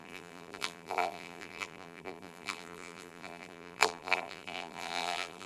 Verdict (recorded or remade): remade